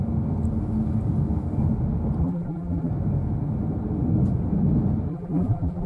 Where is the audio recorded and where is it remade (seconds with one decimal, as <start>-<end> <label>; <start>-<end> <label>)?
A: 0.0-2.2 recorded; 2.2-2.9 remade; 2.9-5.1 recorded; 5.1-5.9 remade